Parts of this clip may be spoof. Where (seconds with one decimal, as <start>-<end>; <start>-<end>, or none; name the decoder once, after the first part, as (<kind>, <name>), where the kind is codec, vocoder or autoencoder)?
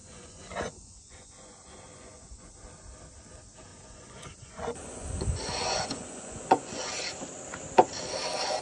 0.0-2.5 (vocoder, Vocos); 3.7-6.9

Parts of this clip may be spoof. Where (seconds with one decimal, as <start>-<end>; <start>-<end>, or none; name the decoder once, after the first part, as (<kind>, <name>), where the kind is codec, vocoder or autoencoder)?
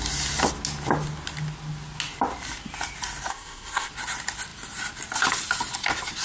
3.3-3.9 (codec, ZipCodec)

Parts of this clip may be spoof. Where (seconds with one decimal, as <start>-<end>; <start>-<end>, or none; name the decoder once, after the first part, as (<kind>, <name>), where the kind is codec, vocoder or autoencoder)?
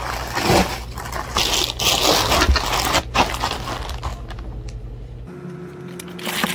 none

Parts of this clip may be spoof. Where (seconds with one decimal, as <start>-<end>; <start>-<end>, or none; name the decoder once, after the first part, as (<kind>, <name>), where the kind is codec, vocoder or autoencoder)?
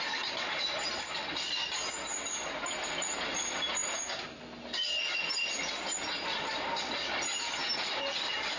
none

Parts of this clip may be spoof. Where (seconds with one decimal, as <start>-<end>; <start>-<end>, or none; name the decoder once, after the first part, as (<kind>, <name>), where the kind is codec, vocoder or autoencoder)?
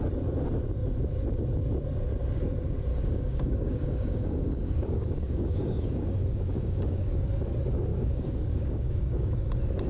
2.9-7.0 (codec, DAC); 7.9-9.5